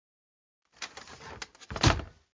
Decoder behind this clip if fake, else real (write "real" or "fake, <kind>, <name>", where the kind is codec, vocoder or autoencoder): real